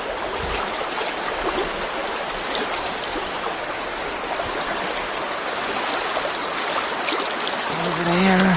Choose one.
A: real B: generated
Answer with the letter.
A